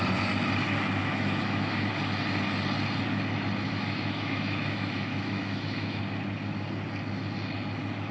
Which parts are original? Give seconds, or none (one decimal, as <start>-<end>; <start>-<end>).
0.0-1.0; 1.9-3.6; 6.0-8.1